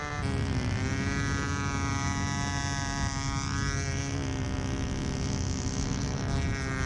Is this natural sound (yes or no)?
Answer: yes